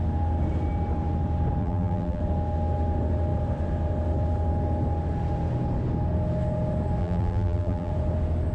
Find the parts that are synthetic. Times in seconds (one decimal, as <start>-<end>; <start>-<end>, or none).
1.6-2.2; 7.0-7.9